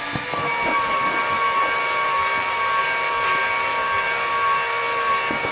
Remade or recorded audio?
recorded